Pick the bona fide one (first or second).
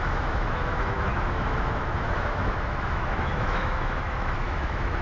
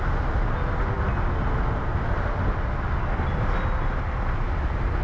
second